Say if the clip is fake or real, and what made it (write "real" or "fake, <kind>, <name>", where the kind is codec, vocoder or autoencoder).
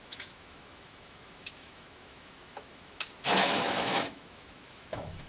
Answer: fake, autoencoder, DAC-VAE